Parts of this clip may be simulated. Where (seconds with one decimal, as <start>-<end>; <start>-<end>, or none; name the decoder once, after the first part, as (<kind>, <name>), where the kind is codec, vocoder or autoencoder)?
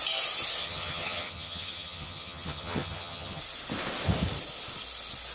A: 0.6-3.4 (vocoder, HiFi-GAN)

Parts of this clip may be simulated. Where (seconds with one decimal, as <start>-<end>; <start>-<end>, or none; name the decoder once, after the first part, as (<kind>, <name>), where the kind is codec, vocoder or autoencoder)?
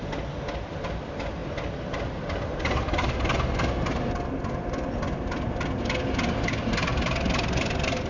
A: none